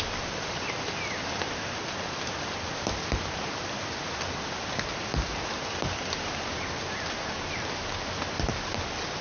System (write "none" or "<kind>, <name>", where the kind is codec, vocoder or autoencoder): none